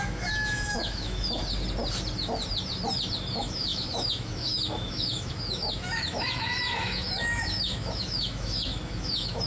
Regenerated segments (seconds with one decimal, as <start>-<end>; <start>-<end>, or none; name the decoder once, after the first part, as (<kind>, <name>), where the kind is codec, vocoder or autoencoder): 0.0-1.4 (autoencoder, DAC-VAE); 3.3-9.5